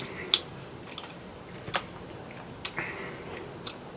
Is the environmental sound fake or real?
real